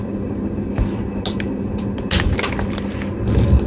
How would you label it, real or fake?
real